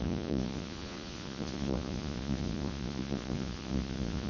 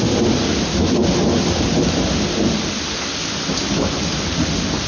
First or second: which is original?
second